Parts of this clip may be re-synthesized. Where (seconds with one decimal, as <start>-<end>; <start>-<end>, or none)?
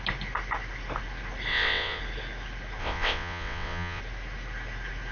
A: 1.5-2.0; 2.8-4.0